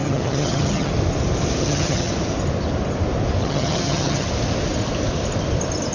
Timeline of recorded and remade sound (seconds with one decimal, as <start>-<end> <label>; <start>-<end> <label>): 0.0-0.9 remade; 0.9-1.6 recorded; 1.6-2.1 remade; 2.1-3.4 recorded; 3.4-4.3 remade; 4.3-5.9 recorded